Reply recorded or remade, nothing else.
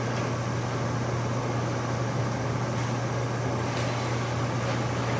recorded